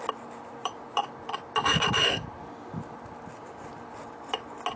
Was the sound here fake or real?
real